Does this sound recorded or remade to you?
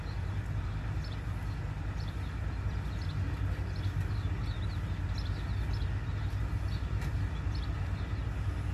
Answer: recorded